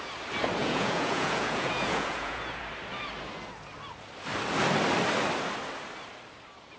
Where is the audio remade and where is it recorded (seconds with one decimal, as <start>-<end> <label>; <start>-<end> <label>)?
0.0-0.6 recorded; 0.6-2.6 remade; 2.6-6.8 recorded